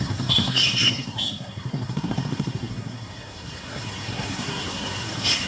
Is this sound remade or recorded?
remade